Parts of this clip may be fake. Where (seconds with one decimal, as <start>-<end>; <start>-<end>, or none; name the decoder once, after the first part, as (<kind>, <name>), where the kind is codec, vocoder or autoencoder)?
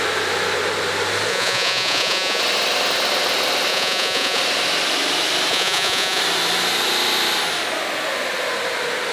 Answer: 1.3-2.4 (vocoder, Vocos); 3.7-4.4; 5.5-6.2